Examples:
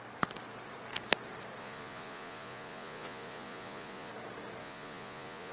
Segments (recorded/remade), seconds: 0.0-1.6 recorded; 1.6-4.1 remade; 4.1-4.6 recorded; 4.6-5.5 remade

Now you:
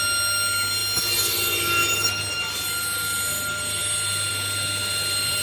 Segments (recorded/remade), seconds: 0.0-4.8 recorded; 4.8-5.4 remade

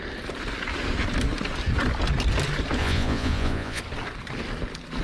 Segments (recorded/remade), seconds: 0.0-2.8 recorded; 2.8-3.8 remade; 3.8-5.0 recorded

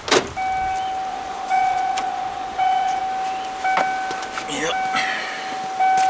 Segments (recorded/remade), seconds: 0.0-1.1 recorded; 1.1-3.0 remade; 3.0-6.1 recorded

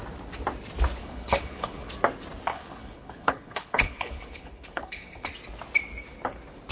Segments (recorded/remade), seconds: 0.0-1.0 recorded; 1.0-1.9 remade; 1.9-2.5 recorded; 2.5-5.3 remade; 5.3-6.7 recorded